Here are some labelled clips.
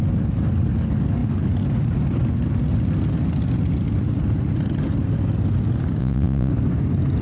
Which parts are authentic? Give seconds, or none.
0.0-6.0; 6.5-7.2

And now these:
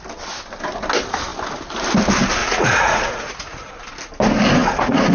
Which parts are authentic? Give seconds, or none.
0.0-2.4; 3.7-4.6

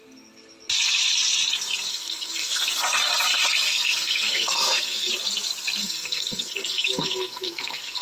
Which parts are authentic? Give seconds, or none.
0.0-1.9; 2.6-3.7; 5.1-5.8

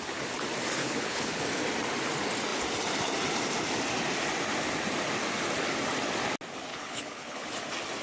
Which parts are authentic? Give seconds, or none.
0.0-0.8; 1.4-6.7; 7.5-8.0

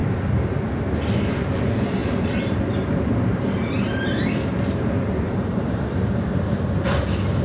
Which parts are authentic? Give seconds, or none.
0.6-2.0; 6.4-7.4

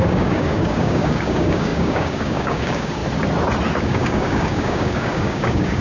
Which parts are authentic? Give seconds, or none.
3.0-3.8

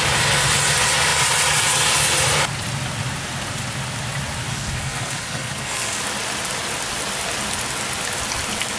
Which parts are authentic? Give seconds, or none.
0.0-4.5; 6.0-8.8